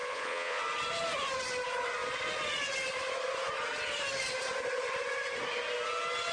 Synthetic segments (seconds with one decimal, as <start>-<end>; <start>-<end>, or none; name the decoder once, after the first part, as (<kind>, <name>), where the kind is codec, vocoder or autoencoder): 0.0-0.6 (vocoder, Vocos)